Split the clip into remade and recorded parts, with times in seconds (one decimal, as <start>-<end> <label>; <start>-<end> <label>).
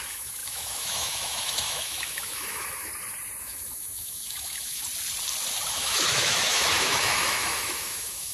0.0-2.9 remade; 2.9-3.4 recorded; 3.4-4.8 remade; 4.8-5.7 recorded; 5.7-8.3 remade